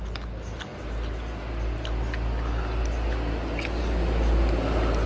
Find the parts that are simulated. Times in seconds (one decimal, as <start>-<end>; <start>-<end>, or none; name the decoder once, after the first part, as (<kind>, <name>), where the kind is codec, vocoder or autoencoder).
none